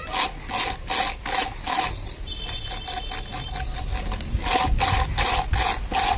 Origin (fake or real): real